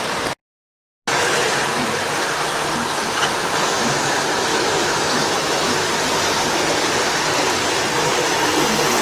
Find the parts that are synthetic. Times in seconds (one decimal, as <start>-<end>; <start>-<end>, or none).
4.5-5.7